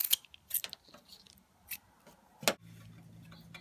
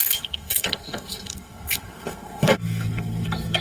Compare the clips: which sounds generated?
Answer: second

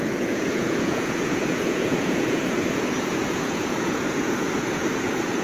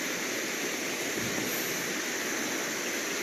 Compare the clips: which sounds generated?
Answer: first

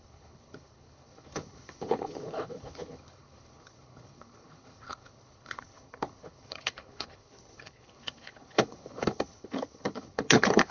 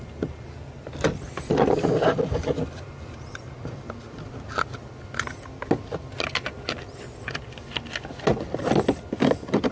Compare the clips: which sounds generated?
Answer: first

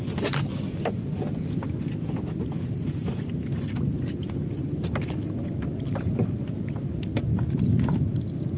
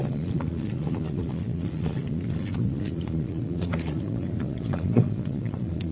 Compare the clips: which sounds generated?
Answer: second